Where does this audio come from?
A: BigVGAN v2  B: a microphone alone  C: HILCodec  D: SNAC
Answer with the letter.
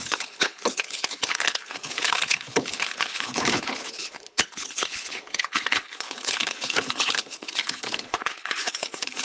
C